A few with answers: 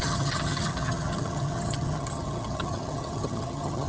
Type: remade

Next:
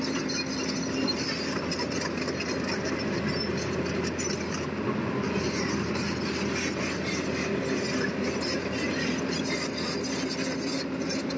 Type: recorded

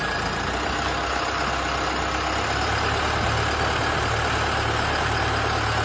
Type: recorded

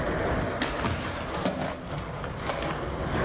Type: recorded